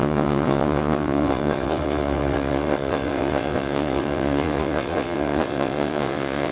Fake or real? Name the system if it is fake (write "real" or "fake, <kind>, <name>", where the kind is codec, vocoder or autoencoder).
fake, vocoder, WaveNeXt